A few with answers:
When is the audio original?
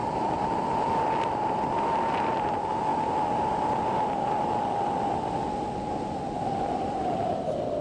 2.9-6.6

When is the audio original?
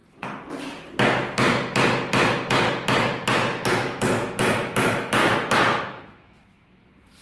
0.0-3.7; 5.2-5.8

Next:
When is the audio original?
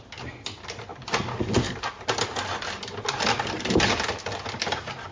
0.0-5.1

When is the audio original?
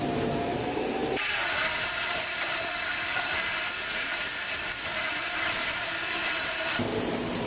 none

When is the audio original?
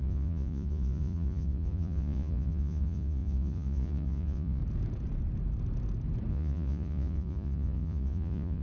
4.6-6.3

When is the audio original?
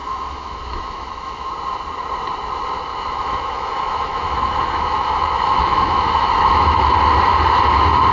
1.5-2.9; 6.9-8.1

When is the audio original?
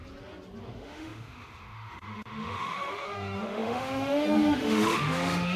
0.0-0.6